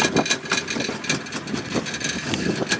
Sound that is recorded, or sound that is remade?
recorded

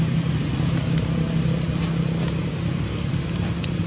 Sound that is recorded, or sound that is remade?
recorded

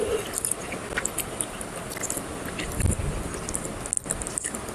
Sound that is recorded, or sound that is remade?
recorded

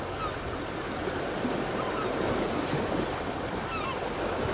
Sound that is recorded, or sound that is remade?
recorded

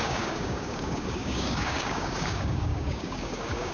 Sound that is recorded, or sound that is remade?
remade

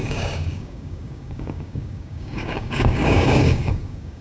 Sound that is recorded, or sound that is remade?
remade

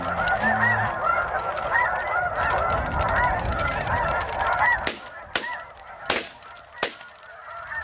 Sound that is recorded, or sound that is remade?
recorded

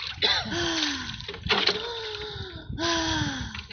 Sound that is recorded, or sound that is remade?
recorded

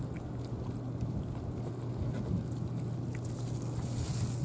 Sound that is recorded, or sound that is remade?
recorded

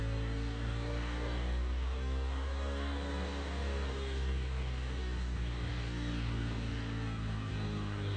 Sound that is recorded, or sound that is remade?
remade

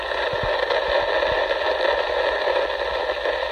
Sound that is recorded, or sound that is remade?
recorded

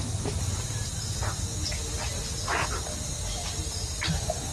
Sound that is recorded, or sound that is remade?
recorded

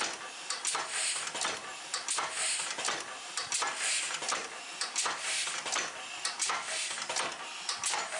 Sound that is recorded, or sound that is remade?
recorded